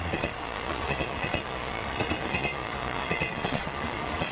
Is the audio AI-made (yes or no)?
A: yes